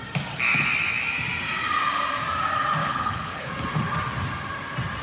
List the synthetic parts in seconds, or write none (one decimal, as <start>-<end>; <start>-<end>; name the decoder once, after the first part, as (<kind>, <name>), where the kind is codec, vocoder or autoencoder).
2.8-3.5 (codec, HILCodec)